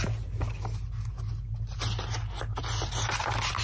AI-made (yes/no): no